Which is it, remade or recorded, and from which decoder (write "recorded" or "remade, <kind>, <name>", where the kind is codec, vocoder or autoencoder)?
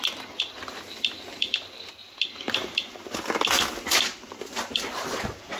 recorded